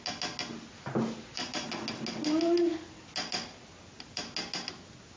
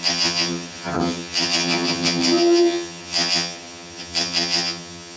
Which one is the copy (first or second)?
second